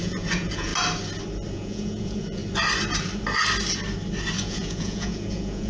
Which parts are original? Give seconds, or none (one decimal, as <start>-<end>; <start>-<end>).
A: 0.7-1.5; 2.4-4.4